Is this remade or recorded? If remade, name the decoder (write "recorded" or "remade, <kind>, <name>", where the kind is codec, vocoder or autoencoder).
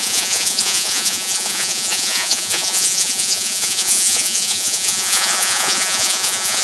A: remade, vocoder, Vocos